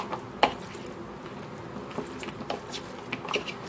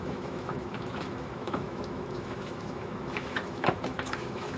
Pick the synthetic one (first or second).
second